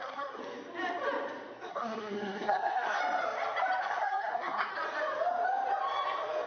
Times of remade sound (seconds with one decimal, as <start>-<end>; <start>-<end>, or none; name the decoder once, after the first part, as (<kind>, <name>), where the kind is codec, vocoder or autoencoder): 0.0-0.4 (codec, SNAC); 1.7-3.0; 3.8-4.7